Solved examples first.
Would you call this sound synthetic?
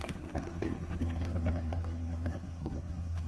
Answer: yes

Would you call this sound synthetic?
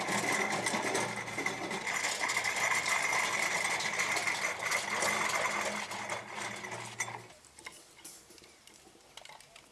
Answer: no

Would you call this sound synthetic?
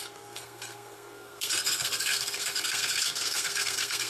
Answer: yes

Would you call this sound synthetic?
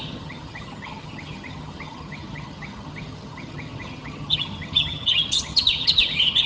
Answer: yes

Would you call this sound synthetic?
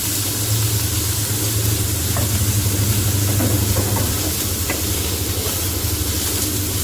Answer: no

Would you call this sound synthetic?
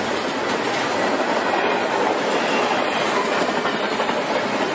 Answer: no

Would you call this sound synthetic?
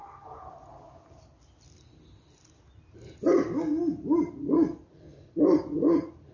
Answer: no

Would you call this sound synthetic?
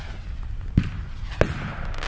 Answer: no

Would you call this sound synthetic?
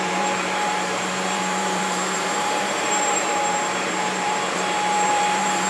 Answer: yes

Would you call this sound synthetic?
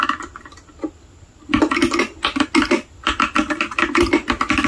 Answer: no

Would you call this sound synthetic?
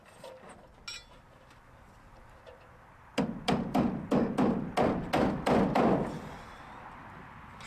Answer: no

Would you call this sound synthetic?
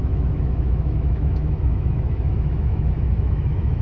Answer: yes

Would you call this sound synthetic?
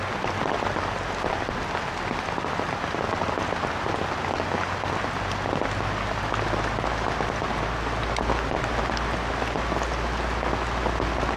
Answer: no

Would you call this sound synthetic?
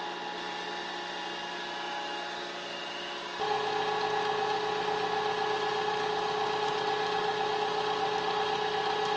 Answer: no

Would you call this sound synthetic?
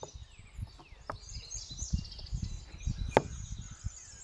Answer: no